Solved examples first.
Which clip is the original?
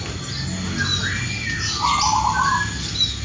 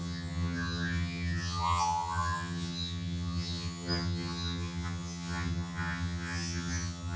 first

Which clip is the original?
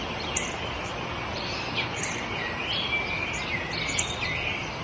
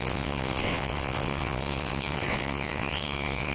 first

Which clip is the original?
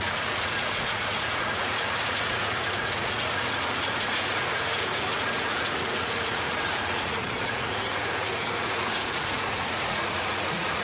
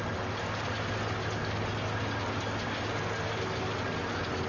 second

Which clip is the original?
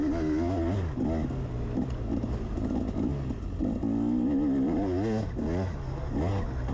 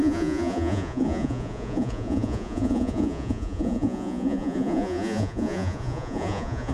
first